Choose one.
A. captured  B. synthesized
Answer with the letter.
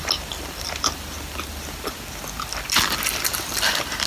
A